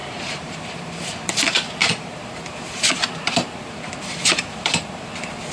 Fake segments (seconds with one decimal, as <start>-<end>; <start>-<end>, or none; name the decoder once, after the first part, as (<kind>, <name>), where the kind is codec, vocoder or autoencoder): 0.0-1.3 (vocoder, BigVGAN v2); 1.8-5.1